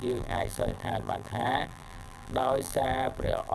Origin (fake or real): fake